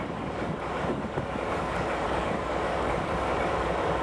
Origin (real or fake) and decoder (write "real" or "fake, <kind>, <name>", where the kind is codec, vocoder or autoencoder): fake, codec, DAC